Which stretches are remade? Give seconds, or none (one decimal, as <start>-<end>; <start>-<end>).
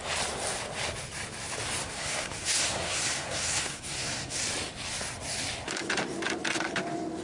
1.8-4.4